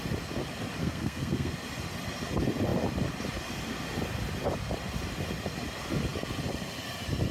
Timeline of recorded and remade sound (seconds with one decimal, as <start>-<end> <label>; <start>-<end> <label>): 0.0-0.8 recorded; 0.8-1.5 remade; 1.5-7.3 recorded